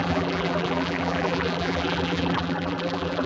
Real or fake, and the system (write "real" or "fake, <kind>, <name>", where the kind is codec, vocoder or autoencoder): fake, vocoder, BigVGAN v2